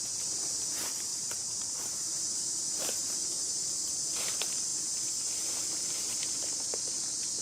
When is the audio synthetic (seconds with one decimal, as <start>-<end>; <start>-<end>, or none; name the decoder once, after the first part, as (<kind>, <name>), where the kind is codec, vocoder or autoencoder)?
1.1-3.4 (vocoder, BigVGAN v2)